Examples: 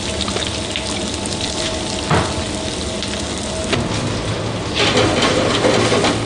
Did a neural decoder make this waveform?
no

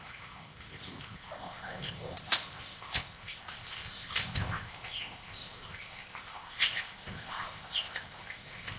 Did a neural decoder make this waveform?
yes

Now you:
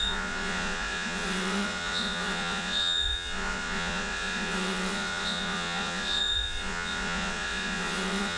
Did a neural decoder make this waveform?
yes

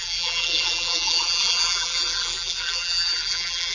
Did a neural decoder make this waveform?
yes